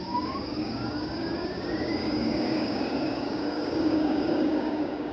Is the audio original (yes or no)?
no